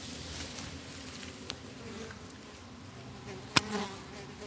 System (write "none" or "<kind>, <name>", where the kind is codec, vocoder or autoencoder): none